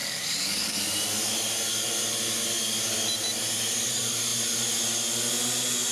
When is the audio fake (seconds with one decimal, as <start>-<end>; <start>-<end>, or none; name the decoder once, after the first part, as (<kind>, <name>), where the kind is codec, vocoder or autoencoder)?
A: 0.0-0.8 (codec, DAC)

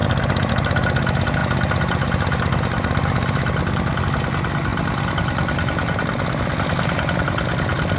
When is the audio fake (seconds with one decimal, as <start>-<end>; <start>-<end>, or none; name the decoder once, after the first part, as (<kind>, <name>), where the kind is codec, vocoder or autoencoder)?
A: none

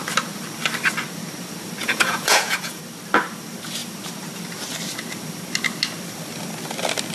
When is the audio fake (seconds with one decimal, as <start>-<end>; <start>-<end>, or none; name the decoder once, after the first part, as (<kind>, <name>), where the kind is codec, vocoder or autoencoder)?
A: 1.8-2.8 (vocoder, Vocos)

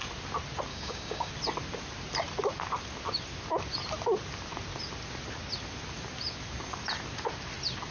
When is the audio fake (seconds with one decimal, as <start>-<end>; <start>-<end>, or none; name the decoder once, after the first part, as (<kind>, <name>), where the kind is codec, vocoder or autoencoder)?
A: 0.7-1.3 (codec, DAC)